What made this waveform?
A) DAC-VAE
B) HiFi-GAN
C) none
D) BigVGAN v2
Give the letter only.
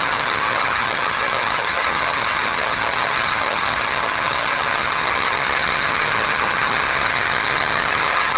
B